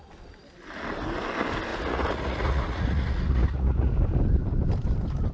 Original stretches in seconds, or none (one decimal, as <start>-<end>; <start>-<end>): 0.0-1.7; 3.9-5.3